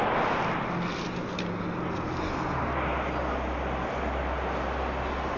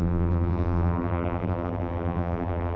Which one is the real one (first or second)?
first